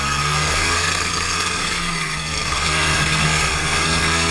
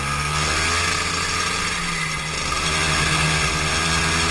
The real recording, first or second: second